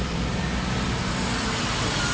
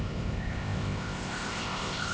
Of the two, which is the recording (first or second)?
first